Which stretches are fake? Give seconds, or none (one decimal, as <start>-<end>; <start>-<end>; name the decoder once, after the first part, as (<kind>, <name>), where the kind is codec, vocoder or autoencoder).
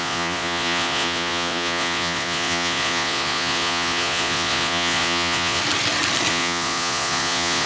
0.0-5.6 (vocoder, Vocos); 6.3-7.7